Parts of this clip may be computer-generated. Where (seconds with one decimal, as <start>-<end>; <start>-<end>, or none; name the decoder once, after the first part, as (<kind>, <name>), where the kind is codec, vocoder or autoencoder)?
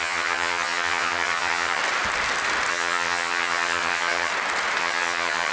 0.0-1.8 (vocoder, HiFi-GAN); 2.7-4.3; 4.8-5.5